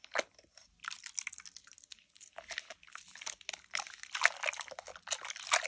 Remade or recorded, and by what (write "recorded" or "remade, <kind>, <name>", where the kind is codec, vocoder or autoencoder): recorded